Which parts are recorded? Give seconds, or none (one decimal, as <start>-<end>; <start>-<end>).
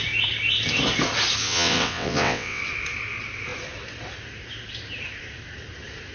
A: 0.0-1.4; 2.6-6.1